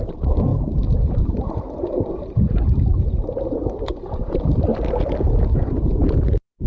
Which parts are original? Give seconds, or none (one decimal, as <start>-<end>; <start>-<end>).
0.5-2.1; 3.6-6.3